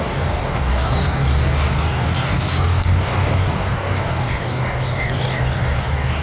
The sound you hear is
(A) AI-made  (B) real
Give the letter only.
A